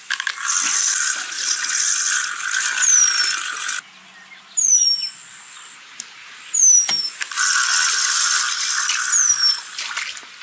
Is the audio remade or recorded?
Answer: recorded